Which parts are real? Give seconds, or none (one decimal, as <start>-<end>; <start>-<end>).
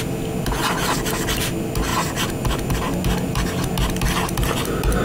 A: 0.0-5.0